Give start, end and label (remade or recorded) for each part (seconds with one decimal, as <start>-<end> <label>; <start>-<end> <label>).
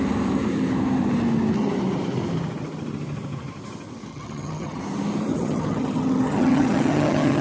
0.0-4.1 recorded; 4.1-4.8 remade; 4.8-5.3 recorded; 5.3-7.4 remade